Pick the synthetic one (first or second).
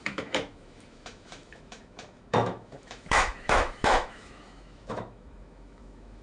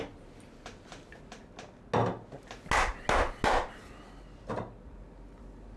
first